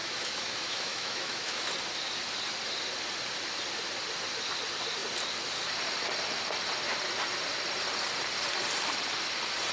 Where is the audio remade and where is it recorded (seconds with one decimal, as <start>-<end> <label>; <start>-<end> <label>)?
0.0-1.7 remade; 1.7-9.7 recorded